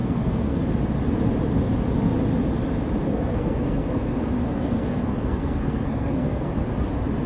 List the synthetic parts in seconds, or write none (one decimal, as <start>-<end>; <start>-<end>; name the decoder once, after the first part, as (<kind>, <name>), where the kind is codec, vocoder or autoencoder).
0.0-0.6 (codec, SNAC); 3.1-6.5